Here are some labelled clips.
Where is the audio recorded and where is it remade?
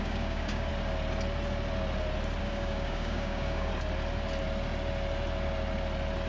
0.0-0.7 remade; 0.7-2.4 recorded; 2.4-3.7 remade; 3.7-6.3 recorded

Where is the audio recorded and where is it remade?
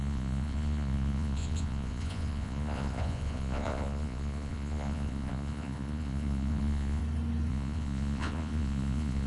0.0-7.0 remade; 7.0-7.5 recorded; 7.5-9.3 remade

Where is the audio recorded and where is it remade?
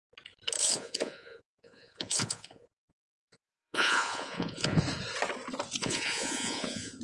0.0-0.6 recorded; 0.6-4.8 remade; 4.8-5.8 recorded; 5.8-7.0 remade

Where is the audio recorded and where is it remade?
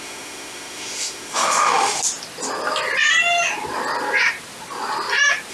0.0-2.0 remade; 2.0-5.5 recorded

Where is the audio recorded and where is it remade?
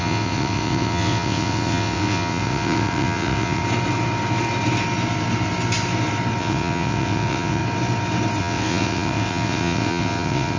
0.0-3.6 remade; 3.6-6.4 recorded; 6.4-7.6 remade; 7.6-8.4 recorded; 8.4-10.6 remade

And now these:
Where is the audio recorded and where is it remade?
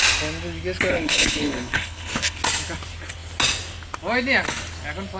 0.0-0.9 recorded; 0.9-2.4 remade; 2.4-5.2 recorded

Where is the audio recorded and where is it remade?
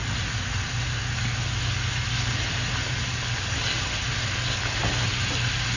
0.0-5.8 recorded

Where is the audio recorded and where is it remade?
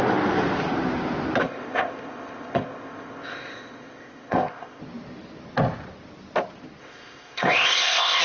0.0-1.4 recorded; 1.4-4.8 remade; 4.8-6.8 recorded; 6.8-8.2 remade